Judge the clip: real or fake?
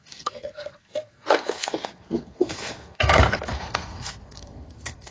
fake